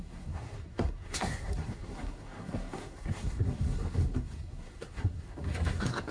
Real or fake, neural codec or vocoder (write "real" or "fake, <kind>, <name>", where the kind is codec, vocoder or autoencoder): fake, codec, SNAC